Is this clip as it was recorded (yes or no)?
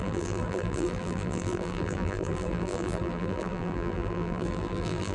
no